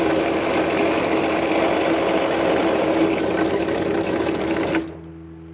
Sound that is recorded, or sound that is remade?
recorded